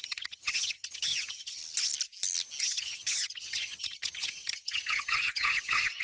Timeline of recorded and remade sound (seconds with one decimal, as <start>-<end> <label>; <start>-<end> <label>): 0.0-1.6 remade; 1.6-2.6 recorded; 2.6-6.0 remade

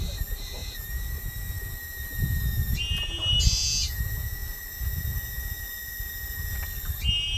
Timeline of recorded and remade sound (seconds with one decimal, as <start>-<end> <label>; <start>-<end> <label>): 0.0-7.4 recorded

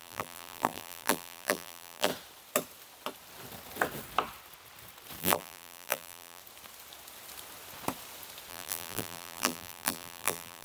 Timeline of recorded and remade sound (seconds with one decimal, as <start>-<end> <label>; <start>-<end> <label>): 0.0-2.1 remade; 2.1-5.2 recorded; 5.2-6.4 remade; 6.4-8.5 recorded; 8.5-10.6 remade

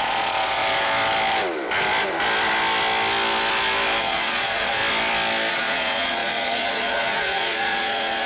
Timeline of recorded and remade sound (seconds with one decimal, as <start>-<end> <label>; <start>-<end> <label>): 0.0-0.6 remade; 0.6-4.0 recorded; 4.0-4.8 remade; 4.8-5.5 recorded; 5.5-8.3 remade

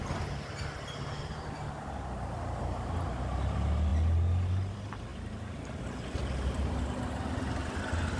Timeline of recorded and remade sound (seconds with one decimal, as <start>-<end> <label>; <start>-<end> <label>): 0.0-5.1 recorded; 5.1-6.8 remade; 6.8-8.2 recorded

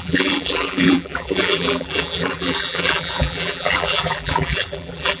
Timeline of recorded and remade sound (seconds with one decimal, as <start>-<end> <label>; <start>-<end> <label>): 0.0-5.2 remade